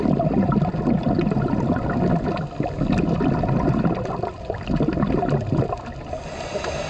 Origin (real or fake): real